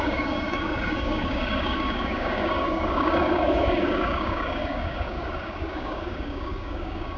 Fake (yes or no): yes